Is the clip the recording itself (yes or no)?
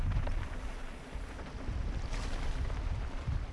yes